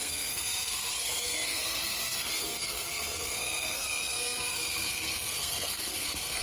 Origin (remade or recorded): remade